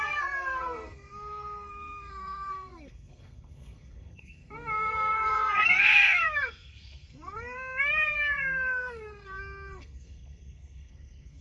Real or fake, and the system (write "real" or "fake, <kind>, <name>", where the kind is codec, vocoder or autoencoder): fake, codec, SNAC